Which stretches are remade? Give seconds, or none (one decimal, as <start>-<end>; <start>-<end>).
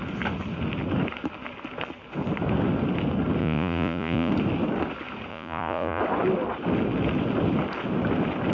3.4-4.3; 5.3-6.0